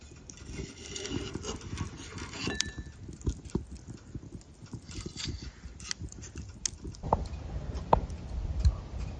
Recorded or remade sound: recorded